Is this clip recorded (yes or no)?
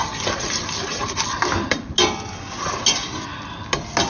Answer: yes